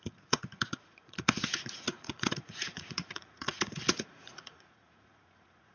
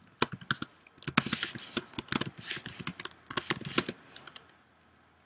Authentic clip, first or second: second